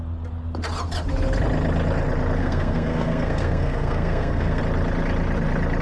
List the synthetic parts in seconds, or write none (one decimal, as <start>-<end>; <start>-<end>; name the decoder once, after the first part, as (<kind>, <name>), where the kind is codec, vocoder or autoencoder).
2.4-4.6 (codec, SNAC)